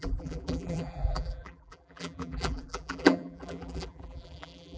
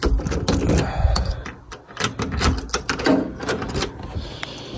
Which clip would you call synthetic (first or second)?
first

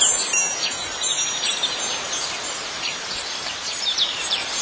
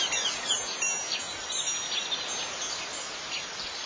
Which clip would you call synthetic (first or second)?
first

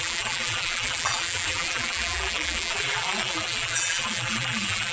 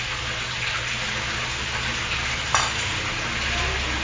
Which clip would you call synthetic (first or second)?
first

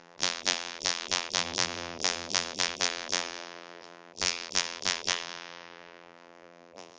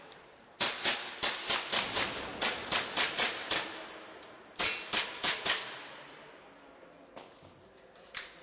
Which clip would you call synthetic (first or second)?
first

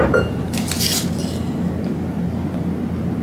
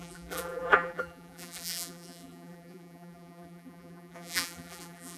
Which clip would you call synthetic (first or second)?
second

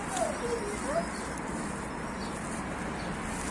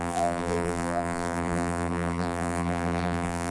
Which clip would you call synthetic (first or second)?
second